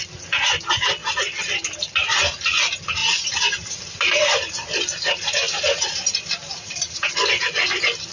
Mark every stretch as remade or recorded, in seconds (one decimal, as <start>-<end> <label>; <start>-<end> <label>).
0.0-1.0 recorded; 1.0-1.8 remade; 1.8-3.0 recorded; 3.0-7.1 remade; 7.1-8.1 recorded